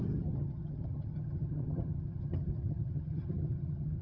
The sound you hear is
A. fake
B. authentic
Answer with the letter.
A